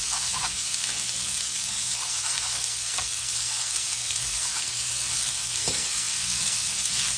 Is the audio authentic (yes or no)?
no